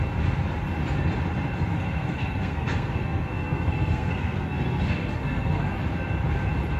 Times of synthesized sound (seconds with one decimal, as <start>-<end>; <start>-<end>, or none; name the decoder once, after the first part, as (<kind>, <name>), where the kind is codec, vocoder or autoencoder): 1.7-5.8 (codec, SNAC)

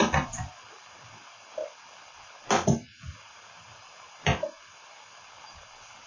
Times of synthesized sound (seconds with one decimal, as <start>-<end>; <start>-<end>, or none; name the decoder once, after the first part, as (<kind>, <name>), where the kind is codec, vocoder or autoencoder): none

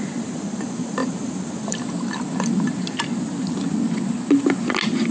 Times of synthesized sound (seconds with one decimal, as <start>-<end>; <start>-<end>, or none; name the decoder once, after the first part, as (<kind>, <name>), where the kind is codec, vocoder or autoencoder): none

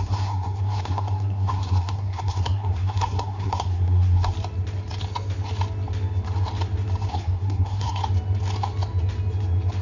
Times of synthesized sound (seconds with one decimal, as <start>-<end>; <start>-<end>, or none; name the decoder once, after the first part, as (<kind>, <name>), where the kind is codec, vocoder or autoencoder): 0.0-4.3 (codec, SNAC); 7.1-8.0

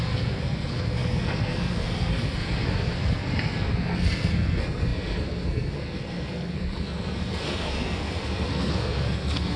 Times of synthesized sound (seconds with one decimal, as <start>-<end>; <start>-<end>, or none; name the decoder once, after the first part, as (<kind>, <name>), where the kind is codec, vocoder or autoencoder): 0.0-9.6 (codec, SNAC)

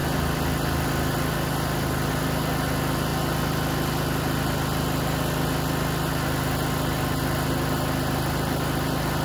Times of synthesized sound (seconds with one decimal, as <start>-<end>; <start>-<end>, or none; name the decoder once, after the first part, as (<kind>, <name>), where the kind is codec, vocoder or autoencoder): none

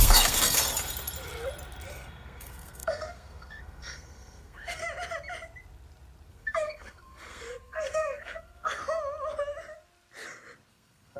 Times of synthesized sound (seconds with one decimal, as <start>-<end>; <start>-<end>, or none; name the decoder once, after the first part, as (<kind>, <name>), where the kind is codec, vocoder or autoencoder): 0.0-0.6 (codec, SNAC); 1.9-4.8; 6.3-8.8; 10.7-11.2